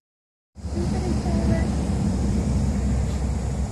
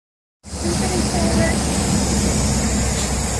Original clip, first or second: second